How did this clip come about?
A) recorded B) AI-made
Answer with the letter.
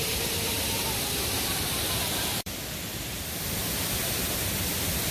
B